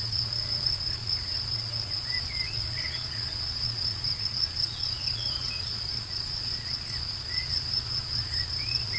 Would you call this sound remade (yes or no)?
yes